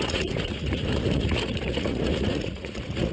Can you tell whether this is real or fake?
fake